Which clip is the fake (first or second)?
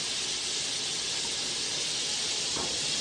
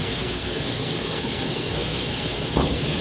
second